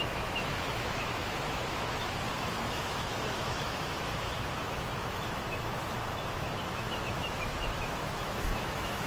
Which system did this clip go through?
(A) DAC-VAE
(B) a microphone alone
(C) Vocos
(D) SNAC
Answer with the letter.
A